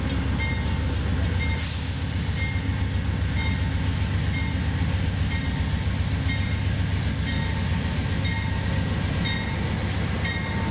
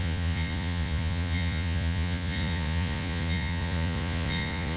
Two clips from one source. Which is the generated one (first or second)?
second